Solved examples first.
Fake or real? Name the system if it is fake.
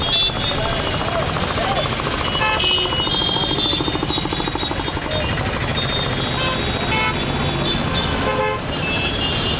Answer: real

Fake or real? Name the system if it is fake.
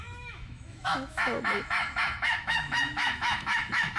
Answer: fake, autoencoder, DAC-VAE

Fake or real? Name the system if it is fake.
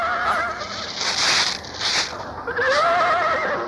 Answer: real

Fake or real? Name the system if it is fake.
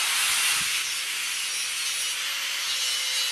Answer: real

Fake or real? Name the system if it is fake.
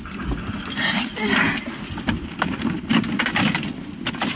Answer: real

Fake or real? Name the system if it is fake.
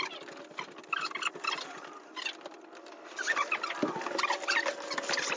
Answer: real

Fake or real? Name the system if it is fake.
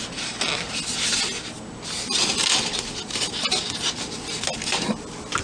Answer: real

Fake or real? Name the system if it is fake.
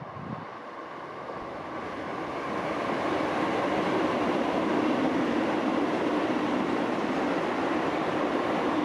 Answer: fake, vocoder, BigVGAN v2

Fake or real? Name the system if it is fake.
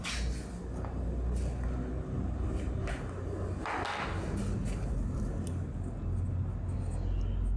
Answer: real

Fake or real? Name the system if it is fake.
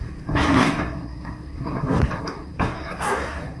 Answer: fake, codec, SNAC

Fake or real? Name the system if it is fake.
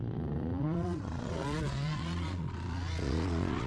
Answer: fake, vocoder, Vocos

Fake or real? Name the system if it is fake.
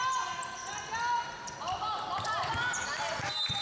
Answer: real